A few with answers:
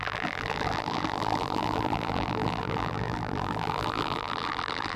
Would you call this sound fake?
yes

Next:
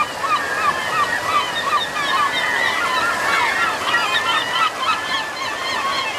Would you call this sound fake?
no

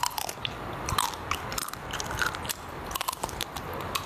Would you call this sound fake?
no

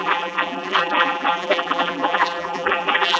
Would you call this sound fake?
yes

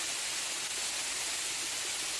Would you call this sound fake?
no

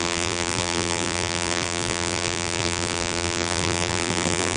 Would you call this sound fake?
yes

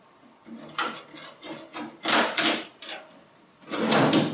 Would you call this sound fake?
no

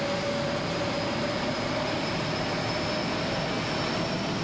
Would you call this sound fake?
no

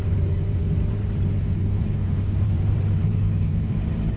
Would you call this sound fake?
yes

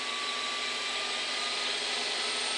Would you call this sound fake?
no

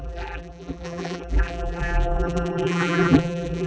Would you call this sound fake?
yes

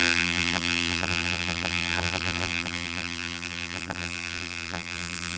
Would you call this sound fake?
yes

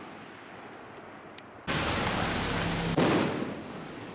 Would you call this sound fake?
no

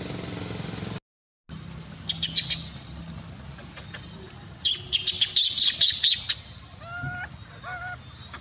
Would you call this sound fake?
no